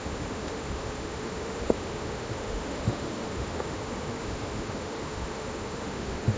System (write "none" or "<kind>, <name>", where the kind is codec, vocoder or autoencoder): autoencoder, DAC-VAE